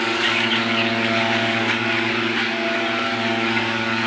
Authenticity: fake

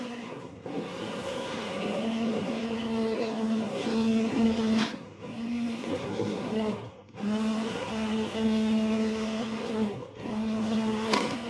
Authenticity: fake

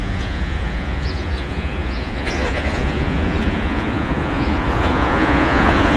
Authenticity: fake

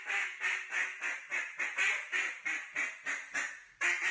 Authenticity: real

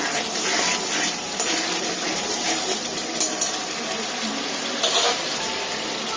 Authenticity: real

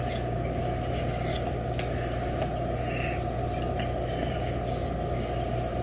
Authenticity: real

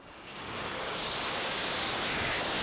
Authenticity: fake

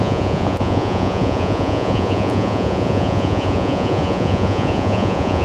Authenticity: fake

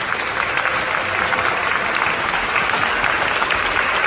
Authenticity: real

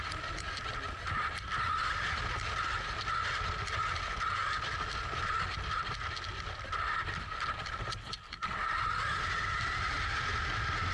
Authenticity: real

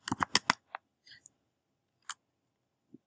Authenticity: real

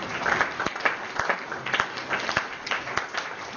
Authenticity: real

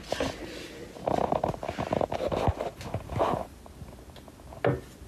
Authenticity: real